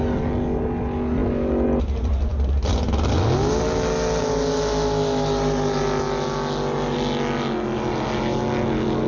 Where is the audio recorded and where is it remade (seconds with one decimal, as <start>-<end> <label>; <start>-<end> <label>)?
0.0-9.1 recorded